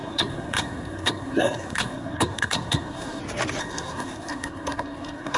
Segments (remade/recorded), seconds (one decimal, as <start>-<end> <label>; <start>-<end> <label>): 0.0-3.2 remade; 3.2-3.6 recorded; 3.6-5.4 remade